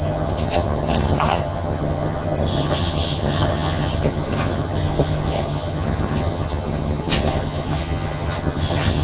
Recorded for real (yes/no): no